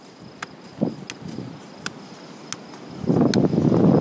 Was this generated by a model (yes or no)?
no